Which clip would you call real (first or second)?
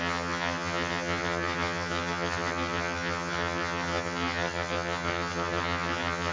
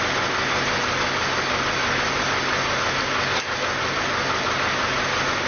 second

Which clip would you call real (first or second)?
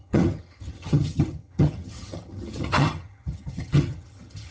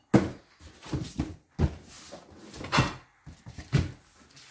second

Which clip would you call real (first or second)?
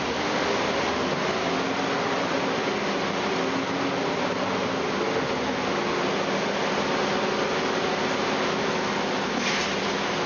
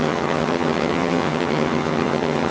first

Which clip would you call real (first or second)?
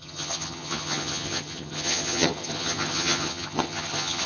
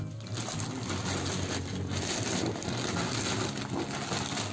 second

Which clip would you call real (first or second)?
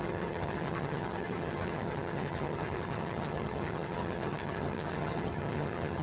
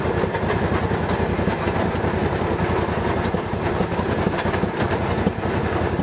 second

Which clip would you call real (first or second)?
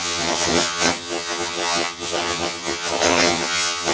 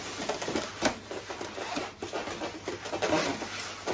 second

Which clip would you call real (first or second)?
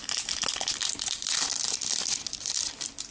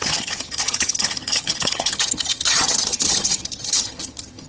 first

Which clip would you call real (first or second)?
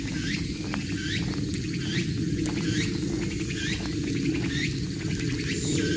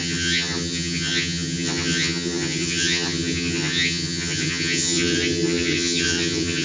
first